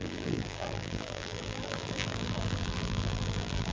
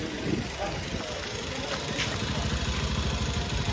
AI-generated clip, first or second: first